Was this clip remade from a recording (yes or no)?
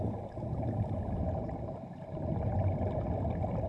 no